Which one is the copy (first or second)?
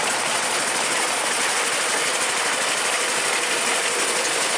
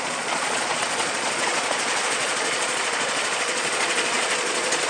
second